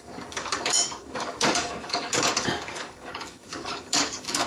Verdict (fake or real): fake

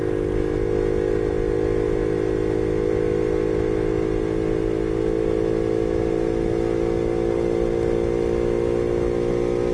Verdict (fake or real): real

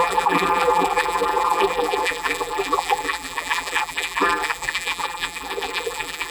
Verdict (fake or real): fake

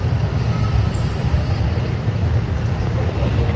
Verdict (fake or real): real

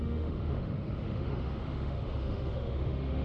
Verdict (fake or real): fake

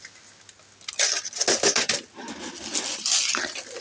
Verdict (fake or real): real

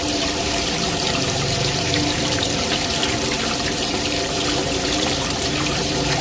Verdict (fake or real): fake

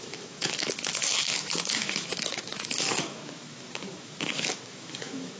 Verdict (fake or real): fake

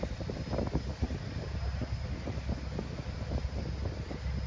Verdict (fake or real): real